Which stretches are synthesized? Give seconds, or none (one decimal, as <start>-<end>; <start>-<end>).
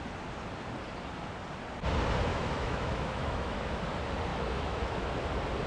2.3-3.8; 4.3-5.1